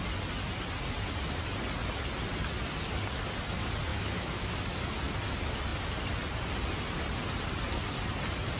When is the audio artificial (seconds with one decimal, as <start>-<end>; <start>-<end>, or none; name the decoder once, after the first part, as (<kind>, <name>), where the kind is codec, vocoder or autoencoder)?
3.9-4.5 (autoencoder, DAC-VAE)